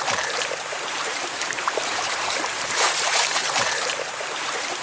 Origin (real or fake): fake